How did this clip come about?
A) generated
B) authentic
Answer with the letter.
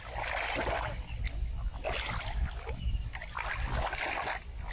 B